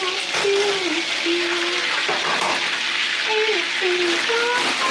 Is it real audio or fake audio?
real